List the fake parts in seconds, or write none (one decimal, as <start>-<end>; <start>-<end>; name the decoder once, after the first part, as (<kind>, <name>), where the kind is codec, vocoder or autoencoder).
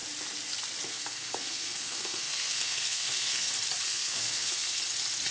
0.9-3.5 (codec, SNAC); 3.9-4.8